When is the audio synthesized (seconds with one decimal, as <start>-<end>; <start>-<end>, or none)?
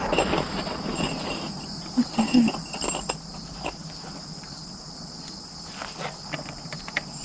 none